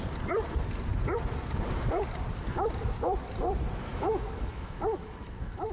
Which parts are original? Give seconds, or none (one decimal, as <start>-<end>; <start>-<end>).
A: 0.0-3.9

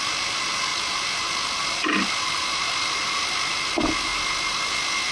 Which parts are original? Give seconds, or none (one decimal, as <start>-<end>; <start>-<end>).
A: 0.0-5.1